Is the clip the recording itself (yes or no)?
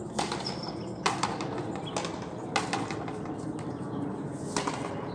yes